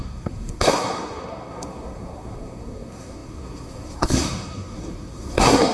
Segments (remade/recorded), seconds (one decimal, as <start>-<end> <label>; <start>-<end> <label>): 0.0-5.7 remade